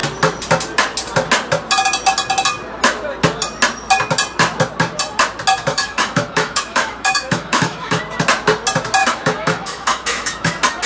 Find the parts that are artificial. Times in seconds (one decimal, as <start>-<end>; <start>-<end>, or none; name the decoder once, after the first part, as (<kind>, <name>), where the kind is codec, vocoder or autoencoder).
5.7-8.0 (autoencoder, DAC-VAE); 9.0-10.5